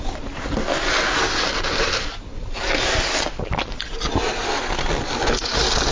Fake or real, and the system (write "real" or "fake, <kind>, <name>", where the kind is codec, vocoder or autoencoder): real